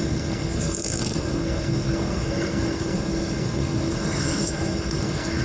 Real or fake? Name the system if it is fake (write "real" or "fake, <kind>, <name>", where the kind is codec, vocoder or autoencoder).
fake, codec, SNAC